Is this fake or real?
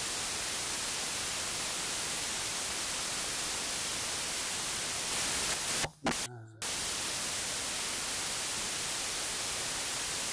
real